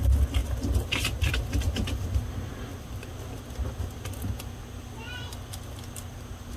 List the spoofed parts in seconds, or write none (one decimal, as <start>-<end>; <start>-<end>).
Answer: 0.4-1.7